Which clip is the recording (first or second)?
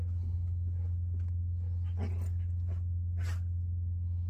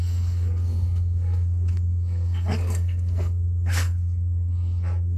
first